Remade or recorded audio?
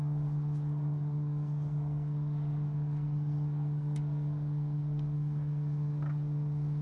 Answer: remade